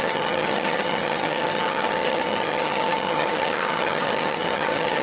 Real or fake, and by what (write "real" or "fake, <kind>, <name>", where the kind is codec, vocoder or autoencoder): fake, vocoder, HiFi-GAN